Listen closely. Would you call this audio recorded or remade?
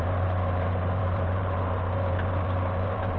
remade